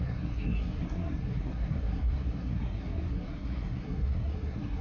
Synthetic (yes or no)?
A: yes